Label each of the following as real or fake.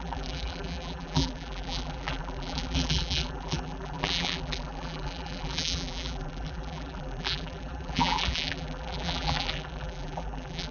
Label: fake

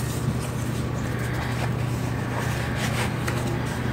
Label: real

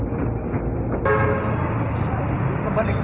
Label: real